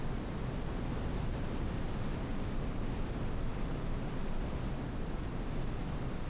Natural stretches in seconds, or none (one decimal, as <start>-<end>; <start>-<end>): 0.0-6.3

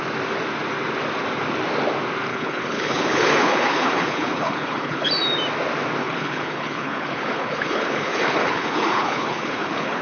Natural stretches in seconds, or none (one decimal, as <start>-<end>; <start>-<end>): 0.0-2.3; 5.1-6.0

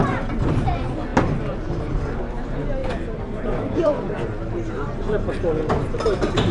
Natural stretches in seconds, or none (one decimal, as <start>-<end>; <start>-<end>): 0.0-2.8; 4.4-6.5

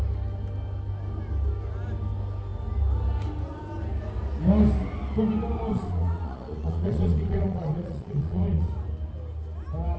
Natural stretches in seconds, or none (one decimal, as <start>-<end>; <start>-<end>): 0.0-5.7; 8.7-10.0

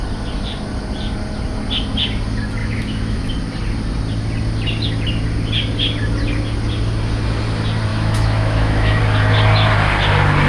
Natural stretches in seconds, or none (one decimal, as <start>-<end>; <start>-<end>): 0.0-2.6; 3.3-7.9; 9.0-10.5